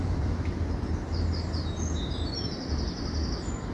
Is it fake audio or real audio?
real